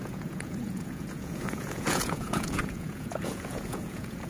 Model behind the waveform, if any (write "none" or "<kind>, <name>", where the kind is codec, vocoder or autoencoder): vocoder, Vocos